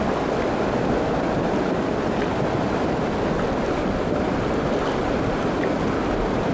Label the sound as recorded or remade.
recorded